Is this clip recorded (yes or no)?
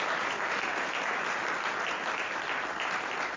yes